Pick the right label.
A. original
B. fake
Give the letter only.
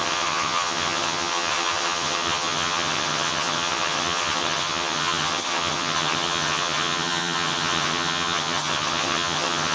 B